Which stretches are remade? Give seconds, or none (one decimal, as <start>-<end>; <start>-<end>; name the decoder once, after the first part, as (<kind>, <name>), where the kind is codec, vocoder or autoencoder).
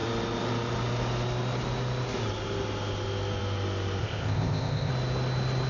4.0-4.9 (codec, ZipCodec)